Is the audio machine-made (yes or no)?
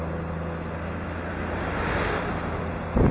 no